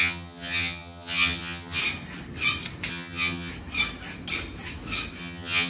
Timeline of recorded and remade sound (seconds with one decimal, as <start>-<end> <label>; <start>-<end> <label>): 0.0-1.8 remade; 1.8-2.9 recorded; 2.9-3.5 remade; 3.5-5.2 recorded; 5.2-5.7 remade